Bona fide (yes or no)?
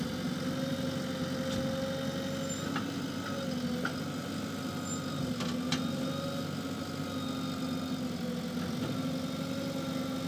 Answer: yes